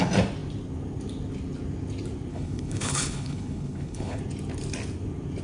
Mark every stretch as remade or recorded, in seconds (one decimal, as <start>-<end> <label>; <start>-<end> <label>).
0.0-2.3 recorded; 2.3-4.2 remade; 4.2-5.4 recorded